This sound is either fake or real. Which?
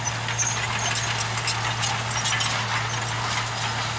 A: real